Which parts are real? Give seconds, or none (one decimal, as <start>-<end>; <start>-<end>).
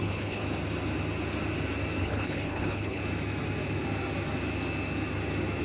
0.4-2.0; 3.0-5.6